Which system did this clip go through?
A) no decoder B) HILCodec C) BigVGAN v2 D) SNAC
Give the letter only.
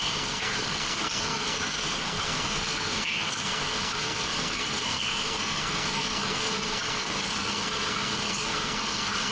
D